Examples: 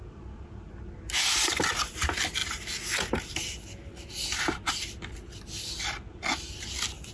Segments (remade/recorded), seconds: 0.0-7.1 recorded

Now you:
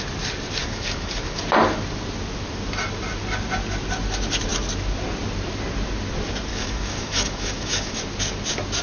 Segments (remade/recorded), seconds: 0.0-0.6 recorded; 0.6-1.4 remade; 1.4-6.5 recorded; 6.5-8.0 remade; 8.0-8.8 recorded

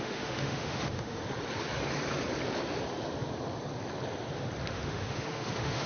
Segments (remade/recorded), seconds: 0.0-1.2 remade; 1.2-4.7 recorded; 4.7-5.9 remade

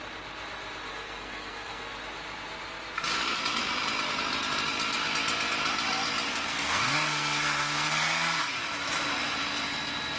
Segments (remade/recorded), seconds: 0.0-0.9 recorded; 0.9-1.8 remade; 1.8-6.3 recorded; 6.3-8.5 remade; 8.5-10.2 recorded

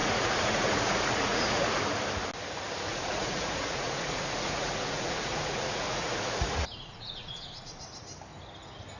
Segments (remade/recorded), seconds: 0.0-1.8 remade; 1.8-2.9 recorded; 2.9-7.8 remade; 7.8-9.0 recorded

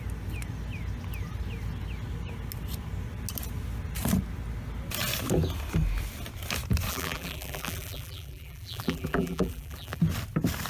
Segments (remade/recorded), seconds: 0.0-6.9 recorded; 6.9-10.0 remade; 10.0-10.7 recorded

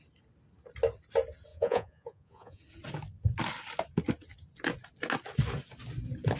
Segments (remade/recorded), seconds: 0.0-1.5 recorded; 1.5-2.6 remade; 2.6-6.4 recorded

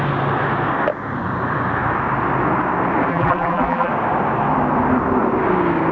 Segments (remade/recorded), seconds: 0.0-3.1 recorded; 3.1-3.9 remade; 3.9-5.9 recorded